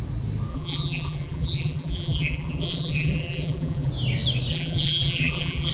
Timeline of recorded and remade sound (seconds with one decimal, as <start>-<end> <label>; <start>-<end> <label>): 0.0-0.5 recorded; 0.5-3.9 remade; 3.9-4.5 recorded; 4.5-5.7 remade